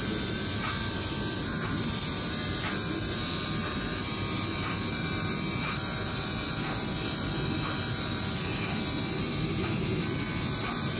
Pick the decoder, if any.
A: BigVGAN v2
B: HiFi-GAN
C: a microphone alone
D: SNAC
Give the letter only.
A